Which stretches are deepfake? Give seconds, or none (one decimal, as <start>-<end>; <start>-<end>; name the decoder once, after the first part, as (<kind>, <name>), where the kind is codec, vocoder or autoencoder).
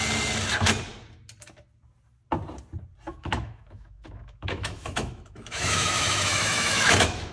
3.1-7.3 (autoencoder, DAC-VAE)